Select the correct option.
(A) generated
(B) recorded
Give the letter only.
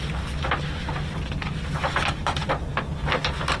B